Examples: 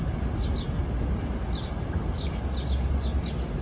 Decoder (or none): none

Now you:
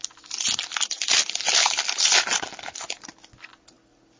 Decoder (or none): none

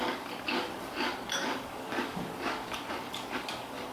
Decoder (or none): codec, DAC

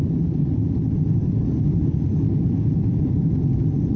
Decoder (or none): vocoder, BigVGAN v2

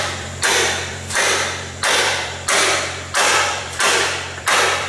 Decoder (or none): vocoder, BigVGAN v2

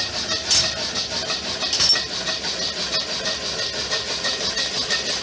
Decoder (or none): none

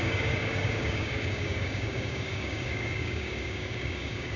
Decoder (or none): codec, DAC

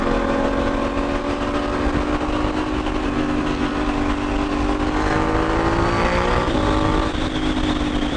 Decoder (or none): none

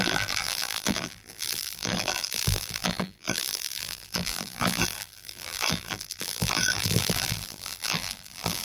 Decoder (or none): vocoder, BigVGAN v2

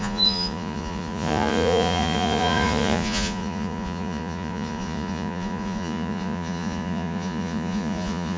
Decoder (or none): vocoder, Vocos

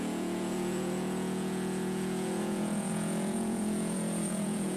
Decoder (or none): vocoder, Vocos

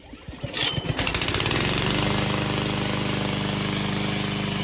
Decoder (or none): none